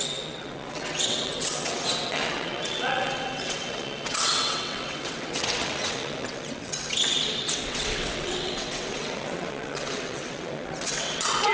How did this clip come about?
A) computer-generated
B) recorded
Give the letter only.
A